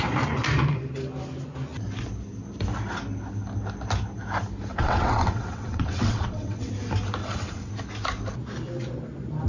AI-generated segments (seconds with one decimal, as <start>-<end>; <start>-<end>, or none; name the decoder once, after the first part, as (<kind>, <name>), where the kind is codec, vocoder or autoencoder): 4.7-6.7 (vocoder, WaveNeXt); 7.2-7.7